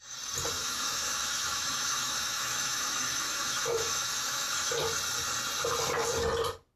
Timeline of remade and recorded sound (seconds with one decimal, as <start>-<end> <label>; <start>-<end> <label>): 0.0-0.6 recorded; 0.6-4.7 remade; 4.7-6.8 recorded